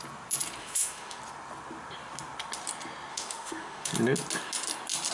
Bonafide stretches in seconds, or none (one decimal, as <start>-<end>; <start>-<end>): 0.0-0.6; 1.2-3.1; 3.9-5.1